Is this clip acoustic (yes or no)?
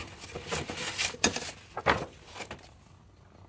yes